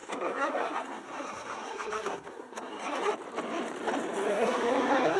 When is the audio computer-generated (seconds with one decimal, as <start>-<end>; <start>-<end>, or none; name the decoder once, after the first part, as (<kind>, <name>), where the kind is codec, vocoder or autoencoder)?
0.0-3.1 (codec, SNAC); 4.3-5.2